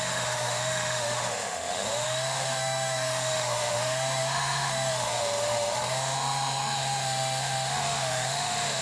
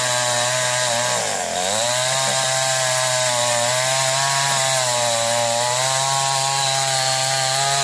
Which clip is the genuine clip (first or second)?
second